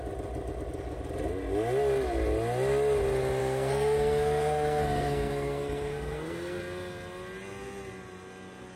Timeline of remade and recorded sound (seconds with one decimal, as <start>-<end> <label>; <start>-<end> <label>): 0.0-3.4 recorded; 3.4-6.6 remade; 6.6-8.8 recorded